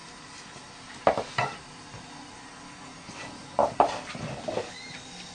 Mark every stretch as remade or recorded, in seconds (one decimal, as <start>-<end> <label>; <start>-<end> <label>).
0.0-5.3 recorded